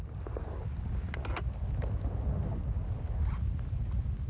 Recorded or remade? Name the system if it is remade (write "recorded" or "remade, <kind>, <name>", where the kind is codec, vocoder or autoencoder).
recorded